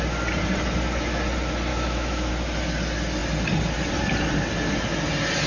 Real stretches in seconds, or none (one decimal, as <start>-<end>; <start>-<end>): 0.0-1.7; 2.3-5.5